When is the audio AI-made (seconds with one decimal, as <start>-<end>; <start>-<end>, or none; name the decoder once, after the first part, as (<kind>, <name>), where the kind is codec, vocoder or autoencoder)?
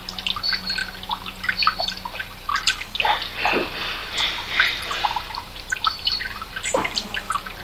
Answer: 4.0-6.5 (vocoder, BigVGAN v2)